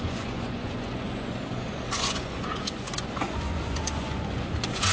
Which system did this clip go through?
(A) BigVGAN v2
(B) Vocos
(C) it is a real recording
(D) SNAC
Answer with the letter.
B